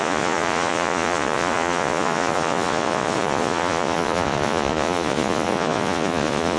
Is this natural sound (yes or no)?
no